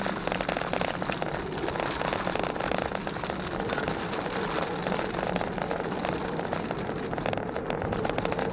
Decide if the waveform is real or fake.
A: real